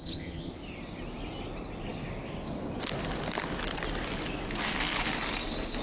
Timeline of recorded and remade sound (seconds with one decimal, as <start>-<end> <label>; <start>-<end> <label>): 0.0-0.5 remade; 0.5-5.8 recorded